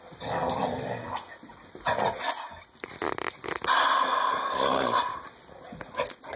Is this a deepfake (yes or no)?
no